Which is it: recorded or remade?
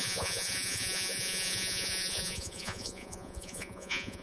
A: remade